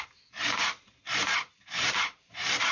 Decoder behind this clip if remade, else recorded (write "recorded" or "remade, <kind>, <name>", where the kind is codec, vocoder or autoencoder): remade, vocoder, BigVGAN v2